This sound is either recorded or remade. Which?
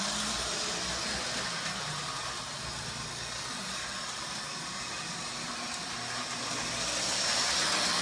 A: recorded